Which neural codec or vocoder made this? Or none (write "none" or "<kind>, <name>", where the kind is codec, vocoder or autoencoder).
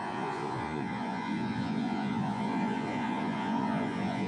vocoder, Vocos